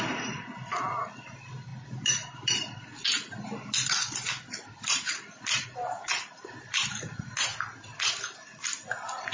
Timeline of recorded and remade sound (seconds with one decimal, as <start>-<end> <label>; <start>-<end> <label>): 0.0-9.3 recorded

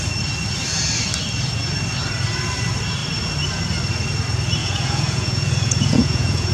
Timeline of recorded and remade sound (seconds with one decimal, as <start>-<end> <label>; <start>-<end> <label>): 0.0-4.6 recorded; 4.6-6.5 remade